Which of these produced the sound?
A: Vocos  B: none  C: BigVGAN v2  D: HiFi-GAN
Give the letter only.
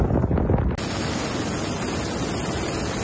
B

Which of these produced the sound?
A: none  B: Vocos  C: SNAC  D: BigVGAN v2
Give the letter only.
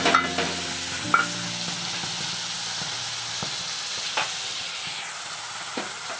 A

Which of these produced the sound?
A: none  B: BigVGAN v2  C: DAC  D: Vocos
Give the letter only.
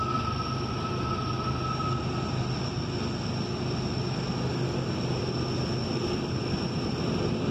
A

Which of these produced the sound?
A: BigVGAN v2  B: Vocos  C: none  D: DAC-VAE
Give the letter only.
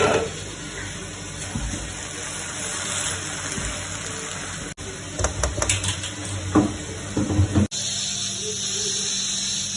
C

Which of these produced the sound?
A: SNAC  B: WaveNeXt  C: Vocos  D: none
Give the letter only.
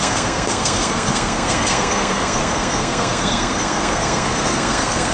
A